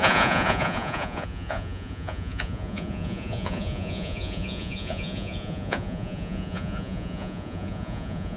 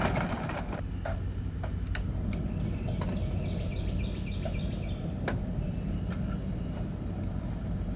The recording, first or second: second